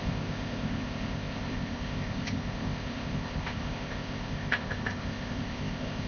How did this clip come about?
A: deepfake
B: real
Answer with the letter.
A